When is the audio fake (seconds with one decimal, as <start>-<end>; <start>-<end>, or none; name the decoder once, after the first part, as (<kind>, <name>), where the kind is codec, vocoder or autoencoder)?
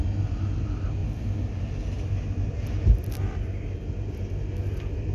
none